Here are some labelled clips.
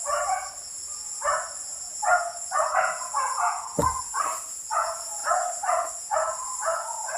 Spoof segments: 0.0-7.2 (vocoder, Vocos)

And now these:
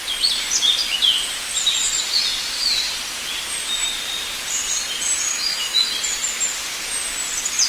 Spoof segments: 5.3-5.9 (autoencoder, DAC-VAE)

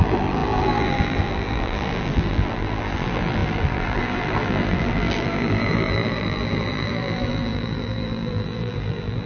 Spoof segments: 0.0-9.3 (vocoder, BigVGAN v2)

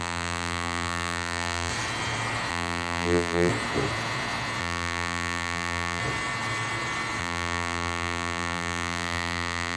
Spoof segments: 0.0-1.7 (vocoder, BigVGAN v2); 2.5-3.5; 4.6-6.0; 7.2-9.8